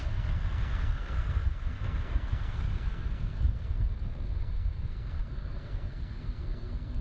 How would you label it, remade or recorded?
remade